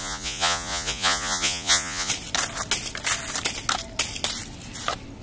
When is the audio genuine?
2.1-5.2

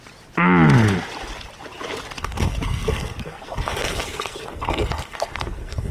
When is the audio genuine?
0.0-2.2

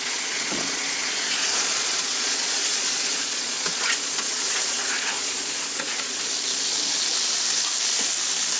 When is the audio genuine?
6.3-8.6

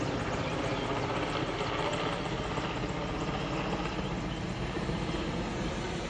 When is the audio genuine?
0.0-6.1

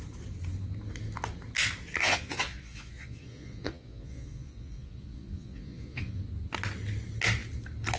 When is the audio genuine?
0.0-2.0; 6.2-8.0

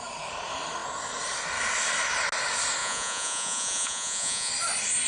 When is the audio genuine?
0.0-2.8; 4.5-5.1

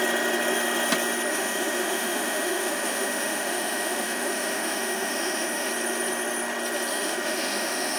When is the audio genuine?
0.0-1.3; 5.7-6.9

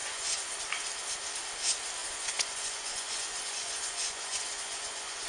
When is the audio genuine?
0.5-2.0